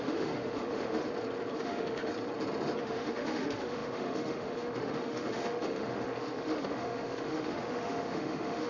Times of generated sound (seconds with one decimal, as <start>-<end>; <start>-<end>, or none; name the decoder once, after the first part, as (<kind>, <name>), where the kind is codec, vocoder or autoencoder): 0.0-1.0 (autoencoder, DAC-VAE); 1.6-2.1; 2.8-8.7